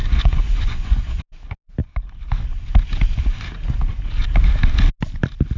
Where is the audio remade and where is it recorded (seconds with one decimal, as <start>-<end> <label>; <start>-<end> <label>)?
0.0-1.2 remade; 1.2-5.6 recorded